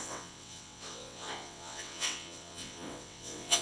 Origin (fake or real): fake